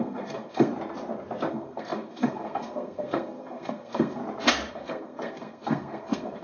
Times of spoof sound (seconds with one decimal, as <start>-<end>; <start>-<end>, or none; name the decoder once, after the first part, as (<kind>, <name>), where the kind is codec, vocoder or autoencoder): 0.0-0.7 (codec, SNAC); 1.5-4.2; 4.7-6.4